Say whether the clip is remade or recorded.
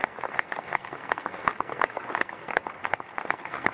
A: remade